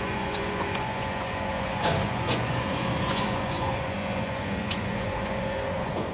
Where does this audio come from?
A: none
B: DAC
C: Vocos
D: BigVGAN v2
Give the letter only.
C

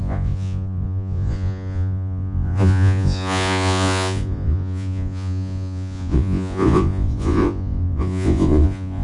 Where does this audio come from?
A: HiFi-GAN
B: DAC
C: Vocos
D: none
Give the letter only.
C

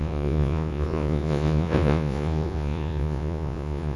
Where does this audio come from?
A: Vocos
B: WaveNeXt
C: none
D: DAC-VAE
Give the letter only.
A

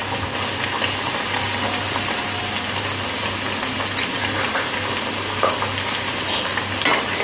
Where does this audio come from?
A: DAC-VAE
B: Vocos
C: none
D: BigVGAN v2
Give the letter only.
C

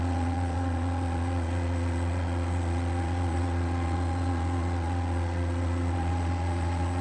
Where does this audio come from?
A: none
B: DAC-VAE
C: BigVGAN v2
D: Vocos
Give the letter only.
D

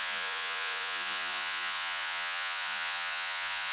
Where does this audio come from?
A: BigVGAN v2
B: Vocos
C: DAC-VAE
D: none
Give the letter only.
B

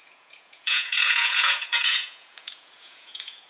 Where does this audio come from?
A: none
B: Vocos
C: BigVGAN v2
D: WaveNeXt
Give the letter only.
B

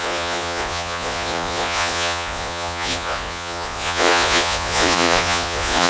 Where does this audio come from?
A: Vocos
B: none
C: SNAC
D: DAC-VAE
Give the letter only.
A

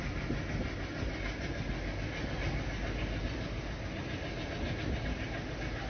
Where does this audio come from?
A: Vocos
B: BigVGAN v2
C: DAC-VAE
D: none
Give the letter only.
D